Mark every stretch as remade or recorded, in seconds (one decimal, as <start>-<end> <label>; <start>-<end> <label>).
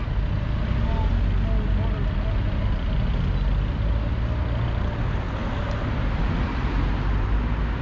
0.0-7.8 recorded